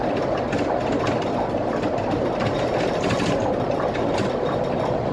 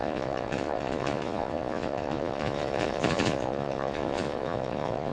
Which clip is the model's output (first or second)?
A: second